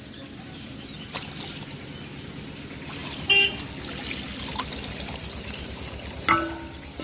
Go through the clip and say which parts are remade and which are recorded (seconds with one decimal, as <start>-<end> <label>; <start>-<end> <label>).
0.0-7.0 recorded

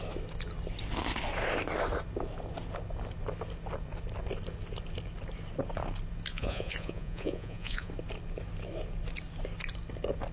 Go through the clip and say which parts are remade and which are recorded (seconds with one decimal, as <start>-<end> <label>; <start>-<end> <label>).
0.0-6.3 recorded; 6.3-7.9 remade; 7.9-10.3 recorded

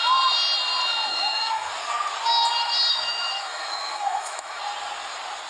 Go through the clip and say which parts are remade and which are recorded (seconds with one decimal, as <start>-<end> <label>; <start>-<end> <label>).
0.0-1.1 recorded; 1.1-1.7 remade; 1.7-2.9 recorded; 2.9-4.6 remade; 4.6-5.5 recorded

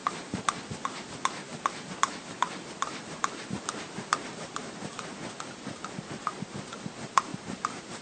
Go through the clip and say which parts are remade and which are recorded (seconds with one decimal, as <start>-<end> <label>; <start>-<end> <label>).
0.0-0.5 remade; 0.5-1.5 recorded; 1.5-5.1 remade; 5.1-7.3 recorded; 7.3-8.0 remade

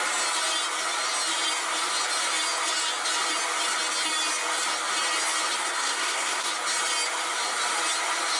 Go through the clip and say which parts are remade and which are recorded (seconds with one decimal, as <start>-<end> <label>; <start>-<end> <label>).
0.0-5.6 recorded; 5.6-6.5 remade; 6.5-8.4 recorded

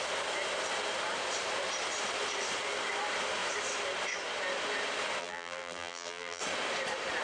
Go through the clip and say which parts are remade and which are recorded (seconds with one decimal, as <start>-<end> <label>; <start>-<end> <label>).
0.0-5.2 recorded; 5.2-6.4 remade; 6.4-7.2 recorded